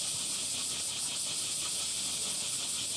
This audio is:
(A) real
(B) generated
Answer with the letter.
A